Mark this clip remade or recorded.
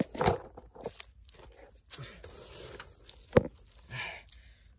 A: recorded